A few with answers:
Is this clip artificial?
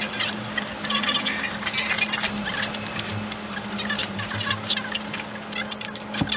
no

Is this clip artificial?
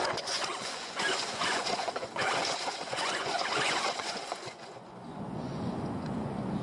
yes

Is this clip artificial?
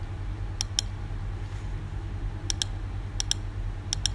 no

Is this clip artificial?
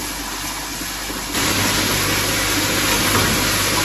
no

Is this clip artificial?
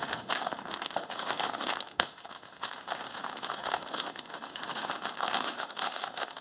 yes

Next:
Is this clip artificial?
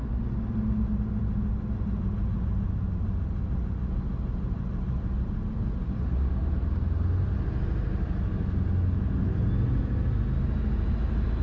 no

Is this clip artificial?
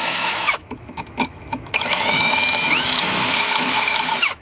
yes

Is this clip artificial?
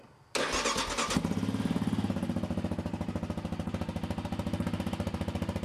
no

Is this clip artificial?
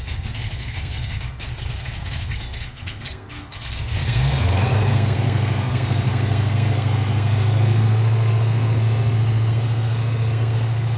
yes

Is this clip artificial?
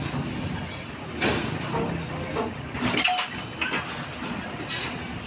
no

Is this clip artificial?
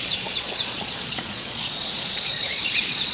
yes